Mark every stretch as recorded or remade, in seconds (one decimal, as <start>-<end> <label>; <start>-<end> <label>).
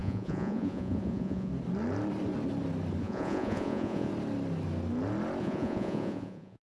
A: 0.0-1.5 remade; 1.5-3.0 recorded; 3.0-4.1 remade; 4.1-5.4 recorded; 5.4-6.7 remade